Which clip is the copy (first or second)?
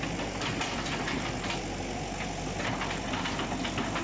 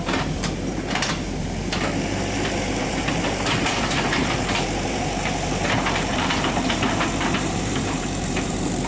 second